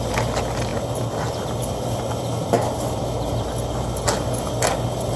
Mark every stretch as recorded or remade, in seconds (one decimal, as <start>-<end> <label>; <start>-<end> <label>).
0.0-5.2 recorded